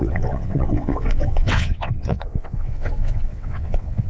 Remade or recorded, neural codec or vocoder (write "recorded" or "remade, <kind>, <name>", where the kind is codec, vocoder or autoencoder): remade, vocoder, WaveNeXt